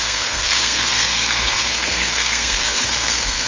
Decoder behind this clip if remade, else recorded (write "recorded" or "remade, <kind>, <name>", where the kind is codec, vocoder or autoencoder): remade, codec, SNAC